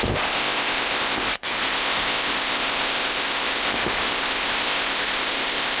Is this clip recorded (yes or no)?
no